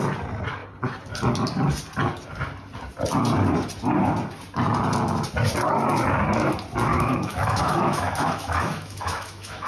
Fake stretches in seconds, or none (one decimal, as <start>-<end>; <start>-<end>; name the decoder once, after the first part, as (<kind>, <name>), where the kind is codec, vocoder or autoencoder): 6.9-9.7 (autoencoder, DAC-VAE)